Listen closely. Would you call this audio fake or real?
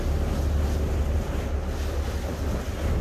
real